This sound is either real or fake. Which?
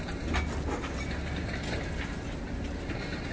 real